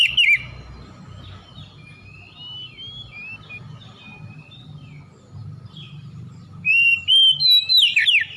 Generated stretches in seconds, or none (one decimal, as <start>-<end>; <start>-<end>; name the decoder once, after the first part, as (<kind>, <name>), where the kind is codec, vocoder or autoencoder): 5.4-7.1 (vocoder, BigVGAN v2)